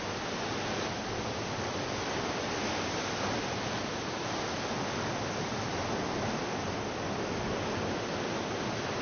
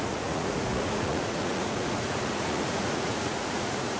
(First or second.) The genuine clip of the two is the first